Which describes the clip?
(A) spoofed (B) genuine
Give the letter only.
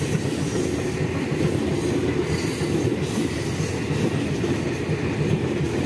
B